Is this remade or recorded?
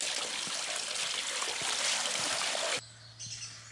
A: recorded